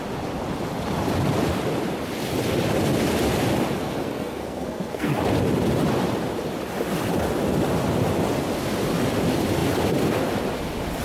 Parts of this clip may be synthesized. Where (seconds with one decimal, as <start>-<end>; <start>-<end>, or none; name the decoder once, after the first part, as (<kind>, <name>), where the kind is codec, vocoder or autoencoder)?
3.8-5.2 (codec, SNAC)